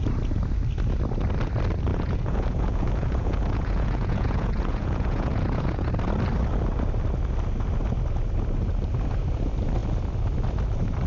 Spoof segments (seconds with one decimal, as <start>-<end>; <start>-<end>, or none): 1.9-5.9